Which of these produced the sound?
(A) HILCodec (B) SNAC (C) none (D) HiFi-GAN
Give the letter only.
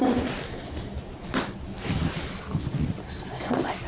C